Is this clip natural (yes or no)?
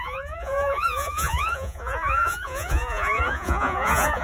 no